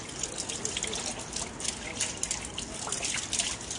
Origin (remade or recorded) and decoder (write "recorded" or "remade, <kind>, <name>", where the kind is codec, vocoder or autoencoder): recorded